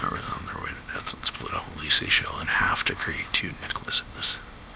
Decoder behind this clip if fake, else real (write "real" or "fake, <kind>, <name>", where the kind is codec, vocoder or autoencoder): fake, codec, ZipCodec